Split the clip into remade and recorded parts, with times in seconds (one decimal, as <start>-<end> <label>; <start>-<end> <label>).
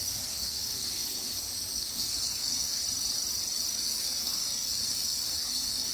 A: 0.0-2.8 remade; 2.8-3.7 recorded; 3.7-5.9 remade